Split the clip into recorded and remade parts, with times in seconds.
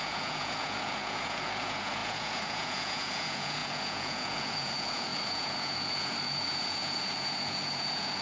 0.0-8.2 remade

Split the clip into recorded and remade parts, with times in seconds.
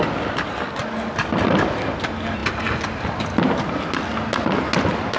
0.0-5.2 recorded